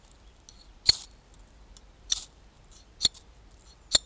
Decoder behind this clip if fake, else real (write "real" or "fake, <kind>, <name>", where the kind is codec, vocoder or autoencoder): real